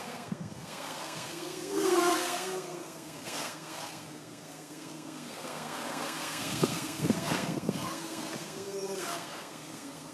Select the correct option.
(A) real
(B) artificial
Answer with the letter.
B